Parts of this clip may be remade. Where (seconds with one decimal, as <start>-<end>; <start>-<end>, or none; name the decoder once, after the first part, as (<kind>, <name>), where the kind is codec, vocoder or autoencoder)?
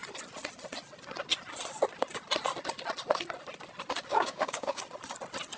4.1-4.8 (codec, DAC)